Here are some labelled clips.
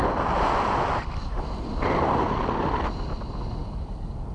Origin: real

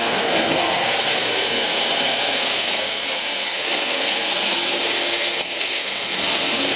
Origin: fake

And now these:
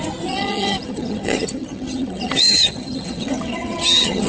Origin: fake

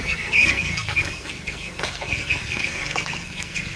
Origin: fake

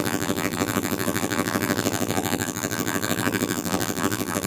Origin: fake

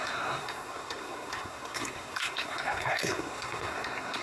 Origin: fake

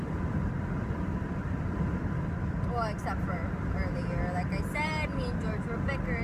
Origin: real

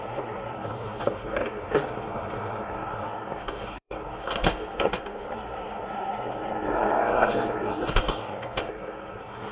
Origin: fake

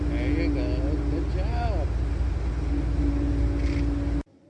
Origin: real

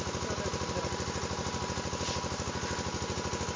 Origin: real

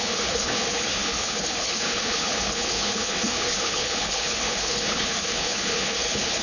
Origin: fake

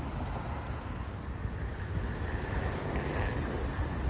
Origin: real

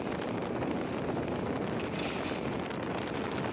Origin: real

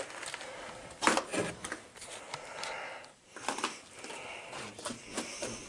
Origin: real